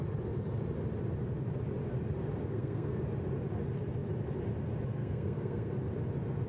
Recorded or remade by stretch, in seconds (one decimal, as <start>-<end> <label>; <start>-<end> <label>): 0.0-2.5 recorded; 2.5-3.0 remade; 3.0-5.0 recorded; 5.0-5.7 remade; 5.7-6.5 recorded

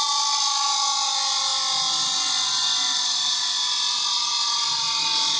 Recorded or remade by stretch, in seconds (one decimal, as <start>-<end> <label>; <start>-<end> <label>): 0.0-5.4 recorded

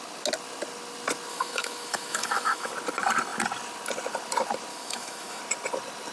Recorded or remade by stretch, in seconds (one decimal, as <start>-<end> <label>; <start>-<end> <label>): 0.0-1.3 recorded; 1.3-2.7 remade; 2.7-4.7 recorded; 4.7-5.4 remade; 5.4-6.1 recorded